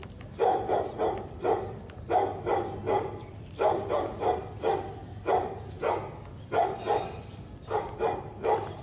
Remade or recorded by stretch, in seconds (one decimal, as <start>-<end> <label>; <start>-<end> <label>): 0.0-5.0 remade; 5.0-7.9 recorded; 7.9-8.8 remade